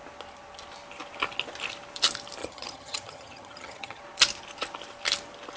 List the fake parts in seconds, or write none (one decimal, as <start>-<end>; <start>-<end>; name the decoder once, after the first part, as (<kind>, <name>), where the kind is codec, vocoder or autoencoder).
2.4-4.0 (vocoder, HiFi-GAN)